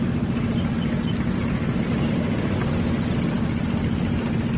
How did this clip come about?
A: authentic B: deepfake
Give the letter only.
A